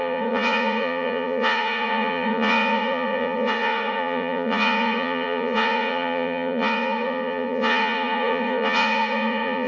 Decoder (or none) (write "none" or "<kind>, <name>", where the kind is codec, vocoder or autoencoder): vocoder, Vocos